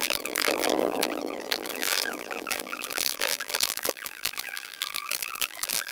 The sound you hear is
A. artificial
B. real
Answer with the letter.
A